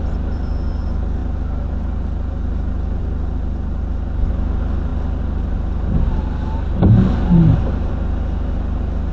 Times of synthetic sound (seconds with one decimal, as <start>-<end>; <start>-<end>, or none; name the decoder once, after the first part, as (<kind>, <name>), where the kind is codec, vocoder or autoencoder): none